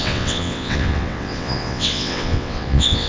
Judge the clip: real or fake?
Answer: fake